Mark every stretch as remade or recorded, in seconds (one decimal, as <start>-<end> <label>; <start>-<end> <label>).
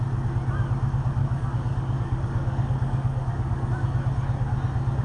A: 0.0-1.2 recorded; 1.2-3.7 remade; 3.7-5.0 recorded